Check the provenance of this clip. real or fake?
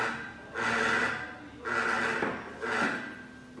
real